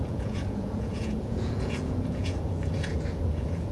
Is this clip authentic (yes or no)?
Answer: no